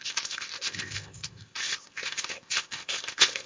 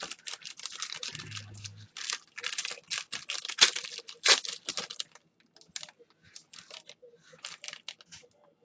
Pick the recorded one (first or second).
second